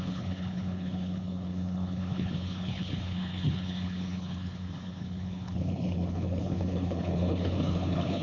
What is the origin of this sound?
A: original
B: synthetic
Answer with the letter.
B